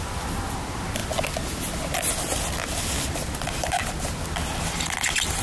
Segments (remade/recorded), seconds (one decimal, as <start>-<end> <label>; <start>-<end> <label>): 0.0-5.4 recorded